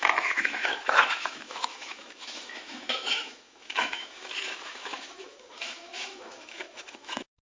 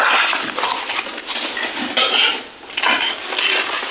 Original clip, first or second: second